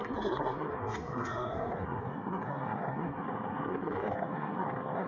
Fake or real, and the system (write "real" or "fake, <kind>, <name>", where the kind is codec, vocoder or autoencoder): fake, codec, SNAC